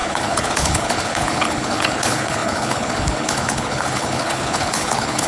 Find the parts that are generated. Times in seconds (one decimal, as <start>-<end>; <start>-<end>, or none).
0.0-5.3